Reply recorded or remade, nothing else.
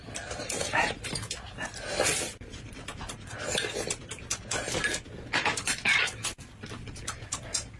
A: recorded